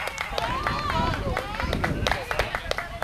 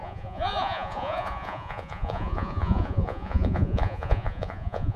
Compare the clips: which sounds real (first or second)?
first